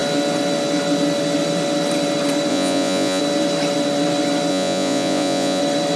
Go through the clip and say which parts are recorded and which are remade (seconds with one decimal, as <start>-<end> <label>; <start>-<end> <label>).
0.0-2.5 recorded; 2.5-3.2 remade; 3.2-4.5 recorded; 4.5-5.6 remade; 5.6-6.0 recorded